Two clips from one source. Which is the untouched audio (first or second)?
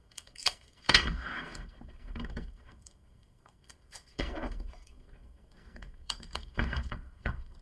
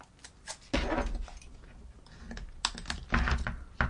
second